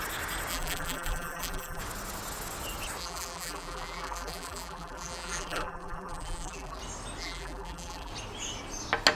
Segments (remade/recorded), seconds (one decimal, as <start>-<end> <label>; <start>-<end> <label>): 0.0-0.5 recorded; 0.5-1.8 remade; 1.8-3.0 recorded; 3.0-6.8 remade; 6.8-7.2 recorded; 7.2-8.1 remade; 8.1-9.2 recorded